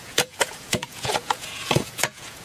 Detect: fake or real fake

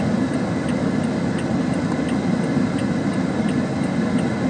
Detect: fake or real real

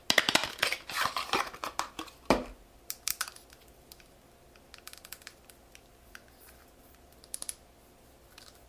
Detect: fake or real real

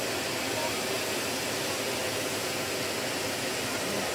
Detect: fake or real real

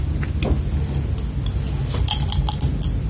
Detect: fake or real real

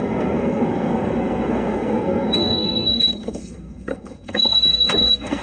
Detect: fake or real fake